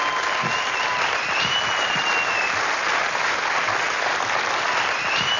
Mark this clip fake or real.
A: real